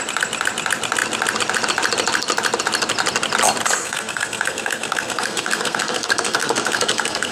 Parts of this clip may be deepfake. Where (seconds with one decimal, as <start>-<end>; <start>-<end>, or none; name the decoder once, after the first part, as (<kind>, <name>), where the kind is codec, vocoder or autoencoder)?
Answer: 3.8-7.3 (codec, SNAC)

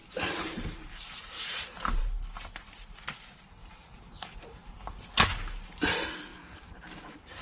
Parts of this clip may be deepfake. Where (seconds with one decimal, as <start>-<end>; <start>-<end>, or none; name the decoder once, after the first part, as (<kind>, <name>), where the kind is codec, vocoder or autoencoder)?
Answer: 0.0-2.0 (vocoder, BigVGAN v2); 3.6-4.3; 6.3-7.4